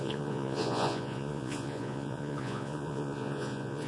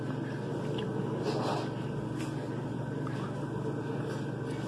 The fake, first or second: first